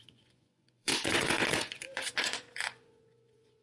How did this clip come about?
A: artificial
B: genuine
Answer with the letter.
A